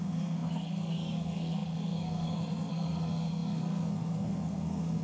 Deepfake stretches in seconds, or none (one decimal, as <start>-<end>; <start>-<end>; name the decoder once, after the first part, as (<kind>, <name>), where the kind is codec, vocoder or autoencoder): 0.0-5.0 (codec, SNAC)